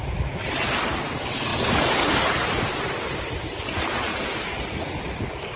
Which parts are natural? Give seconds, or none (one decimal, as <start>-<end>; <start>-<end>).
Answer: 0.0-5.6